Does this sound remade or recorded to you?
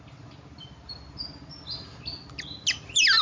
recorded